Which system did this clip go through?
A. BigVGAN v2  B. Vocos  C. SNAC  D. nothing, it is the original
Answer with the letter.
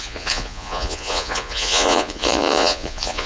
B